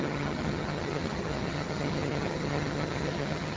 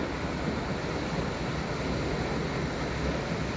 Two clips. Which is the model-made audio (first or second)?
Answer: first